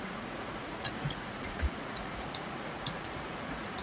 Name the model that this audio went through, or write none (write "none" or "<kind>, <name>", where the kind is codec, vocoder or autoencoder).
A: vocoder, Vocos